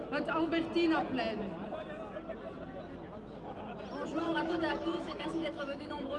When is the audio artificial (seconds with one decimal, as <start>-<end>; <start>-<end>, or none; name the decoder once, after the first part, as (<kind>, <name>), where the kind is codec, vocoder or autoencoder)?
0.0-0.5 (autoencoder, DAC-VAE); 4.2-6.2